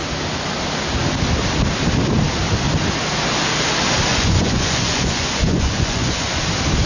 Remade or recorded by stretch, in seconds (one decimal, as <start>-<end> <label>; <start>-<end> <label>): 0.0-4.1 recorded; 4.1-6.4 remade; 6.4-6.9 recorded